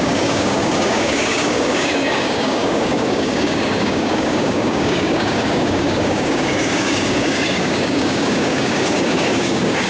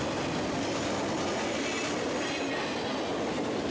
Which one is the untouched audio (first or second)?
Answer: second